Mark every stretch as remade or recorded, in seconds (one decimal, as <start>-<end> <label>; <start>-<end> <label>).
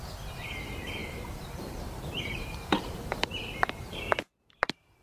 0.0-1.0 recorded; 1.0-4.0 remade; 4.0-5.0 recorded